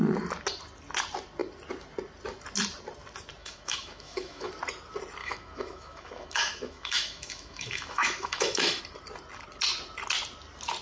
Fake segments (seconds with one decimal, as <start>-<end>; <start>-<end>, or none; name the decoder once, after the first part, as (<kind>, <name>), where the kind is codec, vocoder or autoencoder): 3.4-4.5 (autoencoder, DAC-VAE); 5.2-8.8